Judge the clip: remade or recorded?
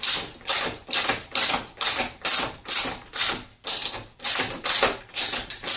recorded